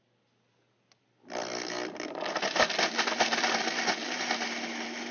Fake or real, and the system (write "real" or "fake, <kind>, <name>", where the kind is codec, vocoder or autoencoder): real